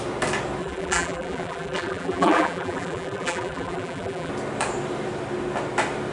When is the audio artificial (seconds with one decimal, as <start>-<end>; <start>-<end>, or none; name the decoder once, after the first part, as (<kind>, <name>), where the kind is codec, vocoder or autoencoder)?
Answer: 0.6-4.3 (vocoder, BigVGAN v2)